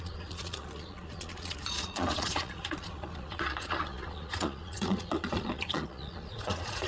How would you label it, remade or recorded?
remade